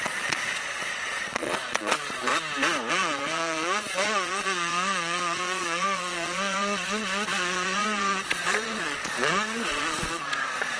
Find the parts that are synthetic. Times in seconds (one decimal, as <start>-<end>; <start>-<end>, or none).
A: 0.0-2.3; 2.9-10.8